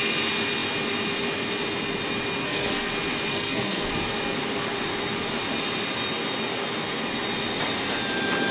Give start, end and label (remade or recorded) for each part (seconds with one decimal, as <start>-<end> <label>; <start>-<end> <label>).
0.0-2.4 recorded; 2.4-2.9 remade; 2.9-3.3 recorded; 3.3-3.9 remade; 3.9-8.5 recorded